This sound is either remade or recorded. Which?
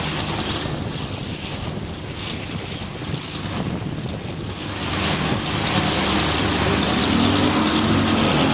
recorded